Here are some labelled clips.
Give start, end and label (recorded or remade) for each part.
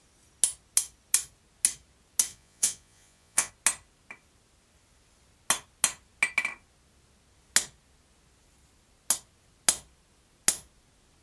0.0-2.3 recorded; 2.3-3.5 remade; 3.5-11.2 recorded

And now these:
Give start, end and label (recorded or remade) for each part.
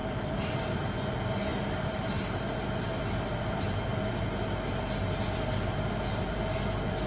0.0-0.6 remade; 0.6-7.1 recorded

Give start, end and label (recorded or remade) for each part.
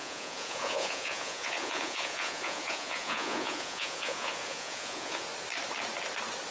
0.0-5.3 remade; 5.3-6.5 recorded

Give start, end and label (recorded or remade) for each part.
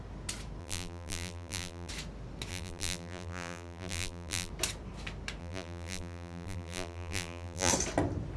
0.0-0.6 recorded; 0.6-1.9 remade; 1.9-2.5 recorded; 2.5-4.5 remade; 4.5-5.4 recorded; 5.4-7.7 remade; 7.7-8.4 recorded